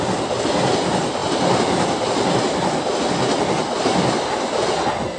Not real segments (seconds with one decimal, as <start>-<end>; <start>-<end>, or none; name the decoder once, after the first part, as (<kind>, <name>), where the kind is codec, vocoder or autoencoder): none